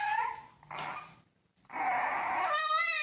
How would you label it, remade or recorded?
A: recorded